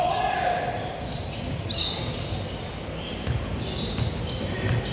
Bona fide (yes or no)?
yes